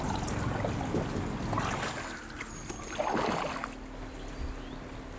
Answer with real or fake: real